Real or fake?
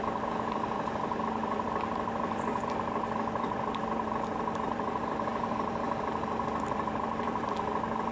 fake